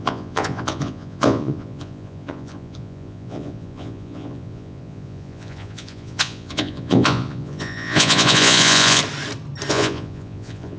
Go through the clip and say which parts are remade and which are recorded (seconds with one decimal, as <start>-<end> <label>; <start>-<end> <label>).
0.0-9.0 remade; 9.0-9.7 recorded; 9.7-10.8 remade